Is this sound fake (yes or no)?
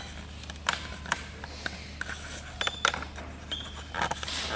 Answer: no